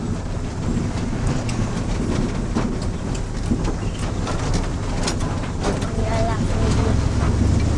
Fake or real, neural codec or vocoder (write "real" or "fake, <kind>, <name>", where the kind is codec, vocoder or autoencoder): real